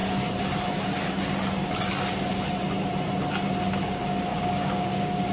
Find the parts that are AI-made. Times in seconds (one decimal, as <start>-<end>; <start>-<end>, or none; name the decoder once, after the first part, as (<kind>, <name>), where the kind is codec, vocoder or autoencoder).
4.3-5.3 (codec, DAC)